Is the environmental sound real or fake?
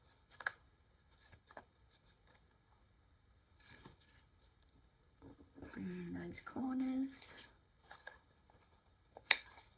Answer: fake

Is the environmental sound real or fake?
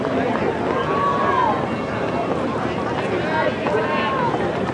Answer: real